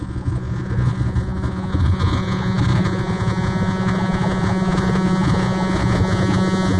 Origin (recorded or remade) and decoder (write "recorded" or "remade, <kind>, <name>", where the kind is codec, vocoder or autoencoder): remade, vocoder, Vocos